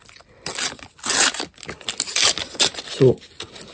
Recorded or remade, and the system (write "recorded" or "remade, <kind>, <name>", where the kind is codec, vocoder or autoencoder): recorded